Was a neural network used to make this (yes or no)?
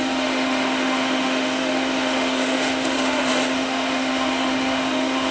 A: yes